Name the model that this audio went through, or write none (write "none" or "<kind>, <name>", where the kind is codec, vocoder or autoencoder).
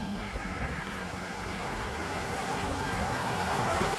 codec, SNAC